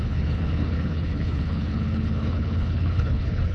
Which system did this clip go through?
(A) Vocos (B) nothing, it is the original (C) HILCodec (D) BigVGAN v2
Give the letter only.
C